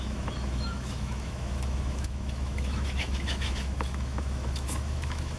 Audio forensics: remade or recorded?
remade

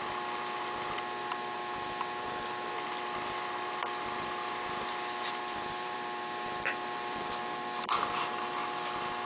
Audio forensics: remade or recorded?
remade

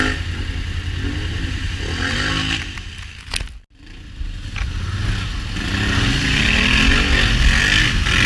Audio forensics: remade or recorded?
recorded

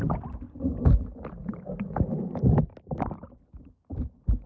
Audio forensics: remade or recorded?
recorded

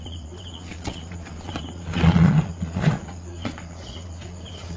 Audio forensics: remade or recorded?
remade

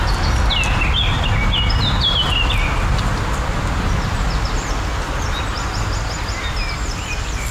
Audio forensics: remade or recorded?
recorded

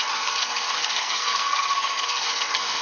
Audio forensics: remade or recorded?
remade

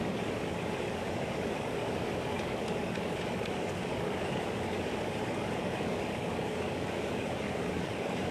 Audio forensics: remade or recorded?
remade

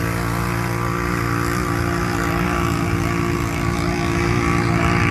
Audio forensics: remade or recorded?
recorded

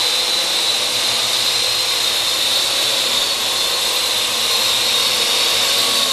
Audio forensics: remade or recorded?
recorded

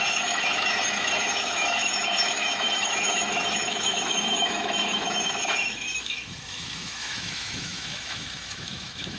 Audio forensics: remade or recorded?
remade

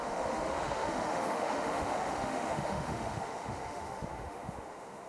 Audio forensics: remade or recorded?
remade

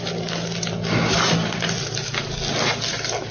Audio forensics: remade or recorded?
recorded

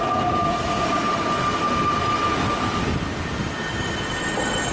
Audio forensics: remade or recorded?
recorded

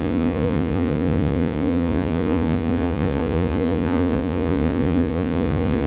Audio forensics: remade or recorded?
remade